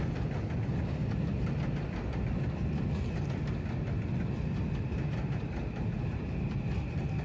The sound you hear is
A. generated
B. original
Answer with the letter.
B